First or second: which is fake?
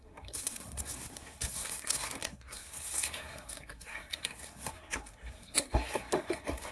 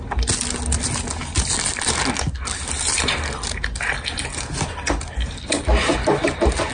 first